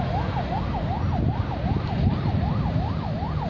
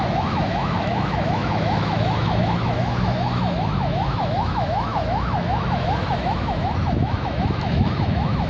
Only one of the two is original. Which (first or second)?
first